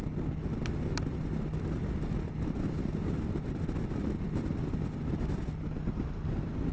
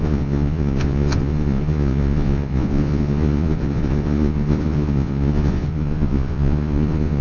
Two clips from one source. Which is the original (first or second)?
first